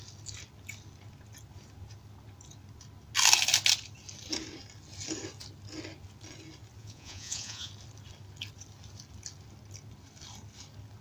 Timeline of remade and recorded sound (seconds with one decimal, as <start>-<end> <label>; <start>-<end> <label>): 0.0-6.8 recorded; 6.8-7.7 remade; 7.7-11.0 recorded